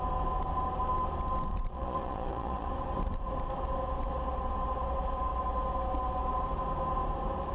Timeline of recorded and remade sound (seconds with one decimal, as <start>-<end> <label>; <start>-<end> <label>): 0.0-1.5 recorded; 1.5-2.7 remade; 2.7-7.5 recorded